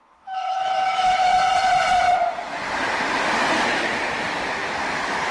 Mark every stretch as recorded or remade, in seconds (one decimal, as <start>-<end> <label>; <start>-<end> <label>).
0.0-1.3 remade; 1.3-4.5 recorded; 4.5-5.3 remade